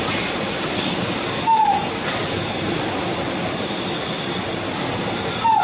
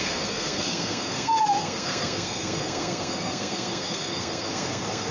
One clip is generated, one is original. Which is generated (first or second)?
second